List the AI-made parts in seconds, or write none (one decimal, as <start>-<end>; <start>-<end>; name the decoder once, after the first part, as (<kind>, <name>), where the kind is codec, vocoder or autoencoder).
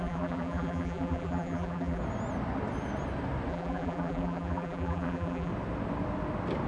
0.0-2.0 (vocoder, BigVGAN v2); 3.5-5.5